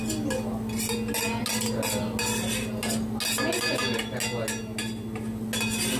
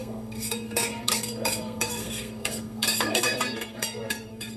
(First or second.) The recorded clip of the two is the first